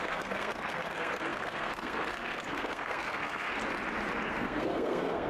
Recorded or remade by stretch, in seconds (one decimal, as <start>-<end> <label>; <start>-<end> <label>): 0.0-3.5 remade; 3.5-4.3 recorded; 4.3-5.3 remade